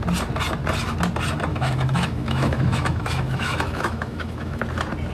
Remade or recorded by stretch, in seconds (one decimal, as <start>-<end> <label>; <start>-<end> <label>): 0.0-1.5 recorded; 1.5-4.6 remade; 4.6-5.1 recorded